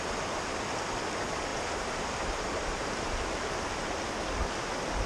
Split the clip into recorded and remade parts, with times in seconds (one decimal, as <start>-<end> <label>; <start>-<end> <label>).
0.0-1.5 recorded; 1.5-3.3 remade; 3.3-5.1 recorded